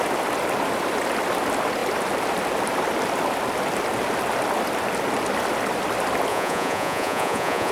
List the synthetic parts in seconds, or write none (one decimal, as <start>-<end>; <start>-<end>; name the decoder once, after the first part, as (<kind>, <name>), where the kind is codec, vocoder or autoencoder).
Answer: 6.3-7.7 (vocoder, Vocos)